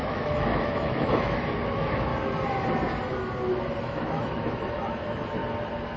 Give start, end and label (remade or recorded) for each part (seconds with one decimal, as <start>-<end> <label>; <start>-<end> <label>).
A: 0.0-2.1 remade; 2.1-3.8 recorded; 3.8-5.4 remade; 5.4-6.0 recorded